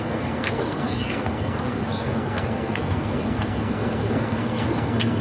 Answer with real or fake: fake